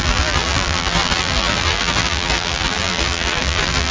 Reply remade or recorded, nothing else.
remade